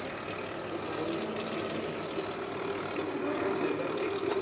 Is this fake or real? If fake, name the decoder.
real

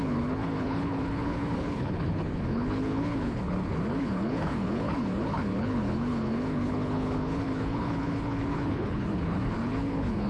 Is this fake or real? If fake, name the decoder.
fake, codec, HILCodec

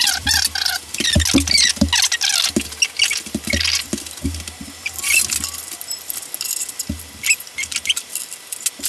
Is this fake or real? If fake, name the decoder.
real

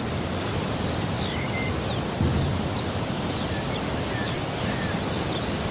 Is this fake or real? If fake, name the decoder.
real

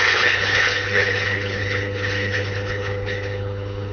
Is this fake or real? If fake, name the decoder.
fake, codec, HILCodec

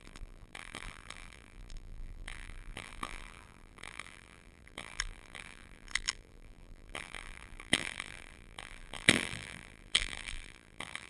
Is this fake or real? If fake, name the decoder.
fake, vocoder, BigVGAN v2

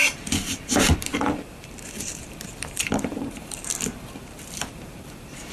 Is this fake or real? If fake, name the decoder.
fake, vocoder, BigVGAN v2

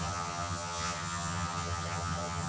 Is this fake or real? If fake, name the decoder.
fake, vocoder, HiFi-GAN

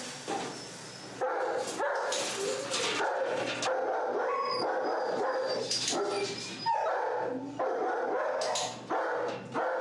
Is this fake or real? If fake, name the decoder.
real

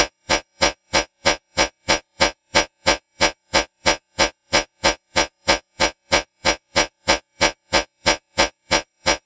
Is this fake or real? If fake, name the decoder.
fake, vocoder, Vocos